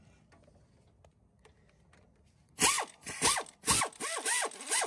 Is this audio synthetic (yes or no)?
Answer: no